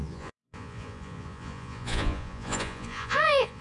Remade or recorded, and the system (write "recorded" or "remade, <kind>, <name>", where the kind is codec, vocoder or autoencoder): remade, vocoder, Vocos